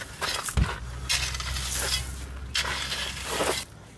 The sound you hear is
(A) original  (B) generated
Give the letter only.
A